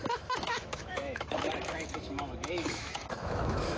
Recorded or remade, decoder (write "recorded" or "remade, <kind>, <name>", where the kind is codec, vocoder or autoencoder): remade, autoencoder, DAC-VAE